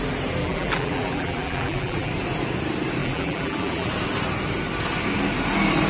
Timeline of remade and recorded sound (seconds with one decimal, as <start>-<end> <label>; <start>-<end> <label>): 0.0-0.4 recorded; 0.4-2.1 remade; 2.1-3.0 recorded; 3.0-3.9 remade; 3.9-5.9 recorded